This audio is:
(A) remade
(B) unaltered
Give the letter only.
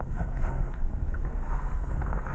A